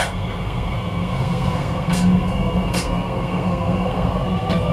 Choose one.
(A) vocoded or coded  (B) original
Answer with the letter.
A